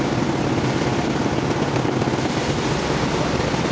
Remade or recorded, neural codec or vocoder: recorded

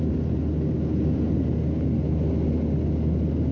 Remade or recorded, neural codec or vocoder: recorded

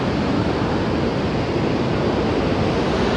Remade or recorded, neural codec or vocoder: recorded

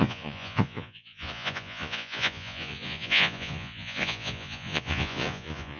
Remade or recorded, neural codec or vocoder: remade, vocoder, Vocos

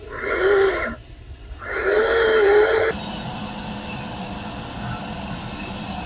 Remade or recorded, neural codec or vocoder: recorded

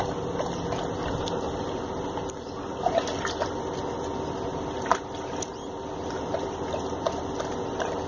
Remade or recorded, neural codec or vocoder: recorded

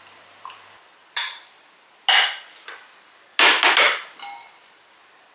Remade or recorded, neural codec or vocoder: recorded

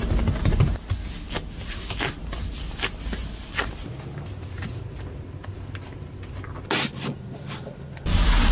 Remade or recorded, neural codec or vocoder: recorded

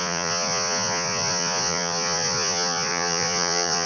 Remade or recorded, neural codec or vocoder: remade, vocoder, Vocos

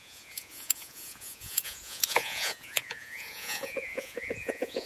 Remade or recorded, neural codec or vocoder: remade, vocoder, Vocos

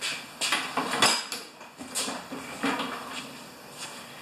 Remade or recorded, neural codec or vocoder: recorded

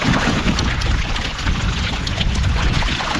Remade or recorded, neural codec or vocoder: remade, vocoder, Vocos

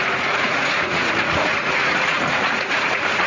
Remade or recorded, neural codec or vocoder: remade, vocoder, Vocos